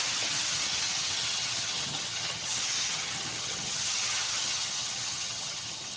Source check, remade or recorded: remade